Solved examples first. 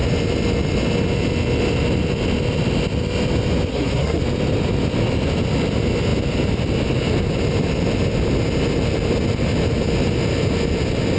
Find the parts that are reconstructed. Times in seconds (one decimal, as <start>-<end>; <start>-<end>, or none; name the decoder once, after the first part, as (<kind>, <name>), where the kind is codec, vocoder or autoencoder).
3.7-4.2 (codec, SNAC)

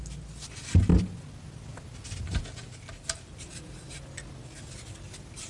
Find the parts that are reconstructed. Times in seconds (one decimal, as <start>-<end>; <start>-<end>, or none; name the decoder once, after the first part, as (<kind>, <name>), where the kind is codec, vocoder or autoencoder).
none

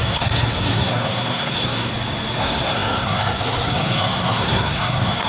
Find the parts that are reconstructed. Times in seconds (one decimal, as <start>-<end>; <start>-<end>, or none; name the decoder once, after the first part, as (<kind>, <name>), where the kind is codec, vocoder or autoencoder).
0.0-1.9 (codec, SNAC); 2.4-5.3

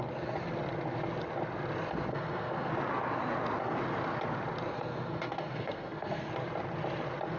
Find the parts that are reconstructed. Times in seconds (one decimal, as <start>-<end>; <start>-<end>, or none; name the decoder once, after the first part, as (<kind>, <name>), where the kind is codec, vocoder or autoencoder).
2.1-2.7 (codec, SNAC); 4.7-6.3